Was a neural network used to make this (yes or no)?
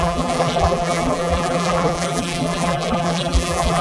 yes